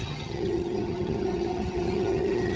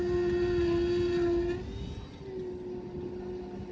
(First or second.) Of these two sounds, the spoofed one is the first